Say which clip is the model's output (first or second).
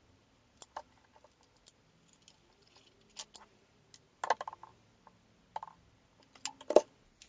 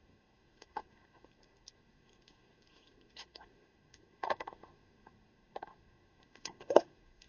second